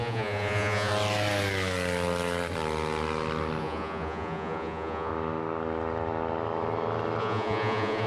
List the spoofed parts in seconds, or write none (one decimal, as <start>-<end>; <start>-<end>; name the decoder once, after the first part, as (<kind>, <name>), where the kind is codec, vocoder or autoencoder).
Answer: 0.0-0.9 (vocoder, Vocos); 3.6-5.1; 7.2-8.1